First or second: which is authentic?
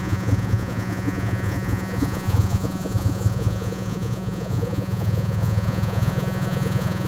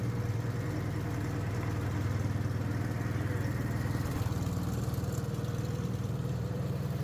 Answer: second